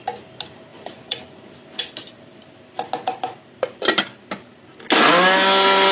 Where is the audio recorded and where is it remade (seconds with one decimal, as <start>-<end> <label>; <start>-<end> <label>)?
0.0-0.7 recorded; 0.7-1.5 remade; 1.5-5.9 recorded